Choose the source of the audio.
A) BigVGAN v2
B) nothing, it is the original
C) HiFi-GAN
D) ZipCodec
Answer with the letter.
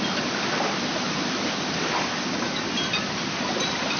B